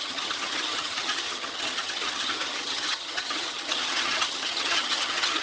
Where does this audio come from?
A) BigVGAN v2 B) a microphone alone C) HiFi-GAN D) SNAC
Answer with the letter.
C